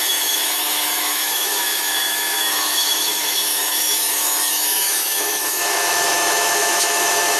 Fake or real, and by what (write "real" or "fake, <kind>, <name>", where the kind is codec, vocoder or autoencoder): fake, autoencoder, DAC-VAE